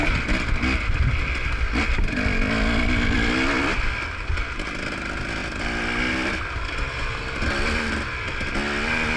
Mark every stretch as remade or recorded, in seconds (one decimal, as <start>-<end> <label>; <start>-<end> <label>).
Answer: 0.0-9.2 recorded